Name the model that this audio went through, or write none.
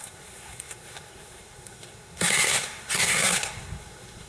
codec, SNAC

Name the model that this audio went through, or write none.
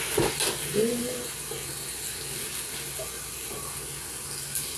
none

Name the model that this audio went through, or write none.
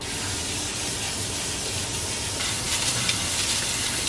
none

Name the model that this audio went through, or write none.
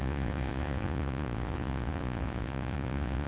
vocoder, Vocos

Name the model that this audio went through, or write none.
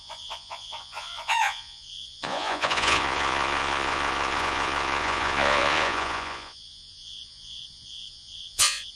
vocoder, Vocos